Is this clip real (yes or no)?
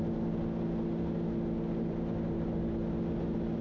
yes